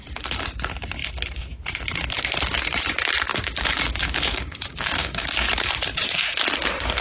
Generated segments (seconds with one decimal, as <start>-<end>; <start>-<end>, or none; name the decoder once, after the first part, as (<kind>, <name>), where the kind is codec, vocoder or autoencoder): 3.3-5.2 (codec, DAC)